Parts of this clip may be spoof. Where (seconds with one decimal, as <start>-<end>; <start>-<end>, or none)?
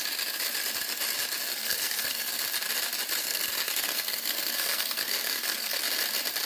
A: 1.5-2.3; 3.2-5.8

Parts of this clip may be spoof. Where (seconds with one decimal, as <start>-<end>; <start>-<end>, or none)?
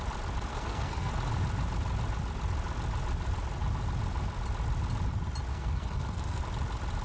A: 0.5-1.1; 5.5-6.4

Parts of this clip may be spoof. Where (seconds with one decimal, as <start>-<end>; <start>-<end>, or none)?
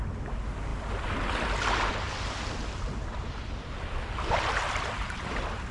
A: none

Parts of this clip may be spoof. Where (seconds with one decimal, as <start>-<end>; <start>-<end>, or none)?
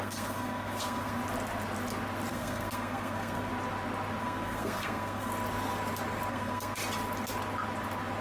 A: 0.0-1.2; 2.3-3.5; 4.2-5.3; 6.3-6.8